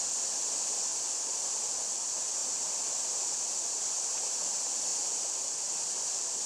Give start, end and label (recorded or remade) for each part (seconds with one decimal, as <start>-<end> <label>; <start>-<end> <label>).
0.0-6.5 recorded

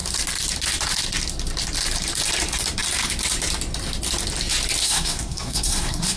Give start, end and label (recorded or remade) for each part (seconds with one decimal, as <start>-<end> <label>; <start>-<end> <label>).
0.0-4.8 recorded; 4.8-6.2 remade